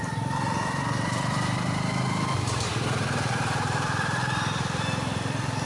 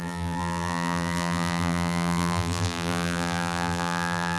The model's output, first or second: second